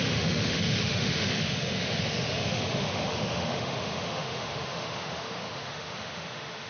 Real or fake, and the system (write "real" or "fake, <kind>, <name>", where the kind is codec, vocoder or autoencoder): fake, autoencoder, DAC-VAE